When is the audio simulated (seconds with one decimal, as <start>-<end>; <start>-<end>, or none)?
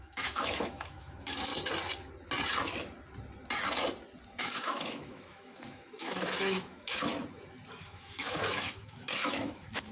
0.0-1.5; 4.4-7.1; 7.8-9.9